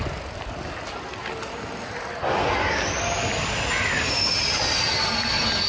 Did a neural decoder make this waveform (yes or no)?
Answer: no